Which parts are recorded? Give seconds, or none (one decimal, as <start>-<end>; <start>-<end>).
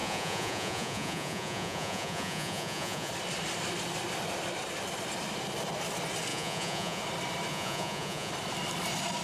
3.1-6.3; 7.0-7.5; 8.3-9.2